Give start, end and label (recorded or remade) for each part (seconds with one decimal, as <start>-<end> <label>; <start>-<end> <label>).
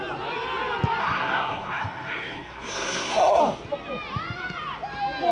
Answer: 0.0-1.0 recorded; 1.0-3.4 remade; 3.4-5.3 recorded